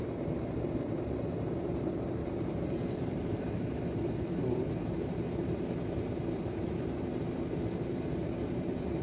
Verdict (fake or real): fake